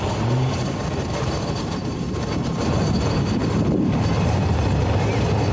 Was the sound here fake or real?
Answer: fake